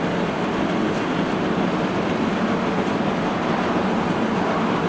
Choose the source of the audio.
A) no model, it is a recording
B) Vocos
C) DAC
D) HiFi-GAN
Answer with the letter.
A